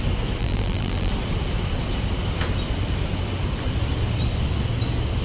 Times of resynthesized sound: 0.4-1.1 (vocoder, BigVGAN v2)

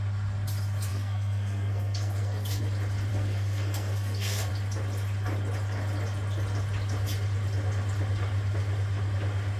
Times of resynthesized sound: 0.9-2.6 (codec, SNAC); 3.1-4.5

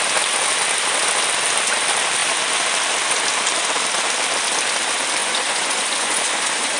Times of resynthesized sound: 5.2-6.8 (vocoder, Vocos)

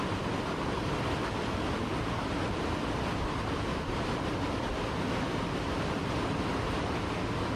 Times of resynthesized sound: none

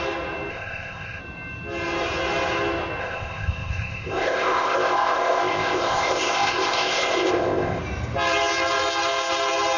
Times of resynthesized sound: 0.5-1.2 (codec, ZipCodec); 3.0-7.8

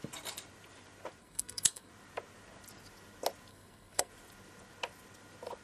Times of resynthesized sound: 1.2-1.9 (codec, SNAC); 3.5-4.1

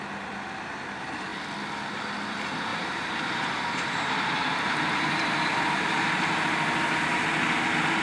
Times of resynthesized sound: 2.7-6.0 (vocoder, BigVGAN v2)